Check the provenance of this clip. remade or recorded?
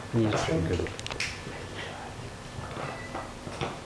recorded